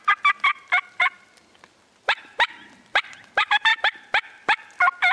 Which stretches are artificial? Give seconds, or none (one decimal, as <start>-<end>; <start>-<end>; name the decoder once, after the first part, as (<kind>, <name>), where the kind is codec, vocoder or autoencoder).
none